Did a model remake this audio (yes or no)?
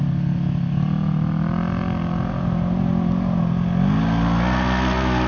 no